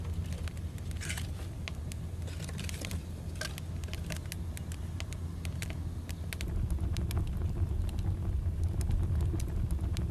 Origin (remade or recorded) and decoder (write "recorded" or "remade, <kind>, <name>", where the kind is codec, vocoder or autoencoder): recorded